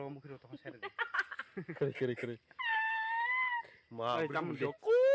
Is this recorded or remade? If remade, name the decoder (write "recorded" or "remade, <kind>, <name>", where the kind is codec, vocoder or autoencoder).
recorded